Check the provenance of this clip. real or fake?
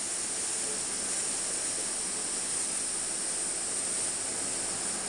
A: real